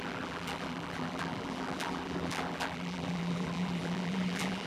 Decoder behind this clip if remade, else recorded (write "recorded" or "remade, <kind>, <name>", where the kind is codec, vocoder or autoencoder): remade, vocoder, BigVGAN v2